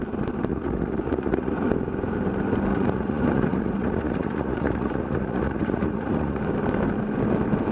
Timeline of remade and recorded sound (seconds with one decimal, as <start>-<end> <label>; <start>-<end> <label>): 0.0-0.5 recorded; 0.5-1.7 remade; 1.7-2.7 recorded; 2.7-6.4 remade; 6.4-7.7 recorded